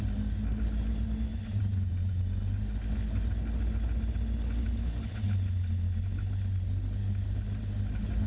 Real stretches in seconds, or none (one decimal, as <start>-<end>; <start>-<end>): 0.0-1.3; 2.2-8.3